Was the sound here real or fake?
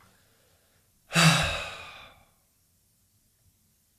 real